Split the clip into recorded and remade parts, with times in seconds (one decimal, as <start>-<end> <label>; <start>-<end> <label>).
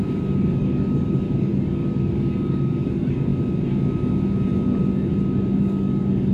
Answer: 0.0-3.3 remade; 3.3-5.6 recorded; 5.6-6.3 remade